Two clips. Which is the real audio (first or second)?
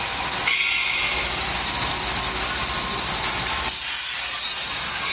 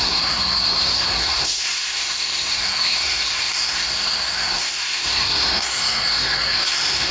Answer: first